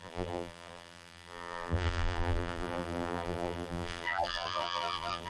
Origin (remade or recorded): remade